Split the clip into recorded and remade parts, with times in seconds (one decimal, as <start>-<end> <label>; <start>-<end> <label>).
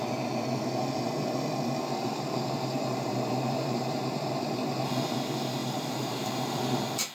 0.0-2.1 recorded; 2.1-4.0 remade; 4.0-5.6 recorded; 5.6-6.6 remade; 6.6-7.1 recorded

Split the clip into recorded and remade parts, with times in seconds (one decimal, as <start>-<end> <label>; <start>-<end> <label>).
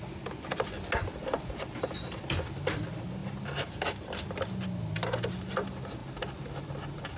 0.0-7.2 recorded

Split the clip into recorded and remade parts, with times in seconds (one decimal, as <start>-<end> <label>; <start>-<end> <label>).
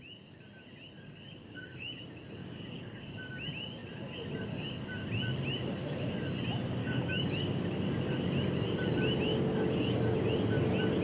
0.0-1.4 recorded; 1.4-2.0 remade; 2.0-2.4 recorded; 2.4-3.3 remade; 3.3-6.8 recorded; 6.8-7.6 remade; 7.6-11.0 recorded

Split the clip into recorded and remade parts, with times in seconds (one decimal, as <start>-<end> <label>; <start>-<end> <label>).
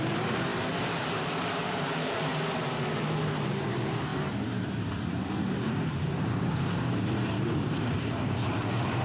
0.0-2.3 remade; 2.3-3.0 recorded; 3.0-9.0 remade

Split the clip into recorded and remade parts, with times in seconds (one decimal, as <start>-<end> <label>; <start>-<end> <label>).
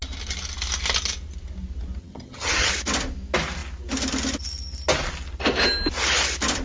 0.0-2.0 recorded; 2.0-2.7 remade; 2.7-6.6 recorded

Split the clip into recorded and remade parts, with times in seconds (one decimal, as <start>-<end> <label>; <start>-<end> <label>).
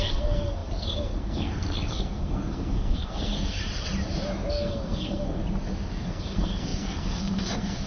0.0-3.6 remade; 3.6-4.5 recorded; 4.5-5.4 remade; 5.4-5.9 recorded; 5.9-7.9 remade